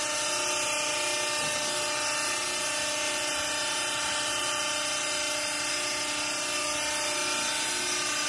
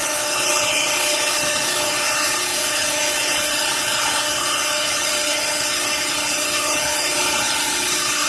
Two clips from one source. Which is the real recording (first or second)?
first